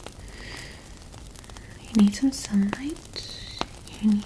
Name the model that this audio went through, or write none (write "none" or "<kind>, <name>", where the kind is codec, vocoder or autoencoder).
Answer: none